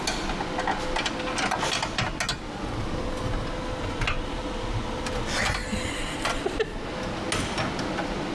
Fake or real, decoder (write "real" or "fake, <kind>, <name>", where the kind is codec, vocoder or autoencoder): real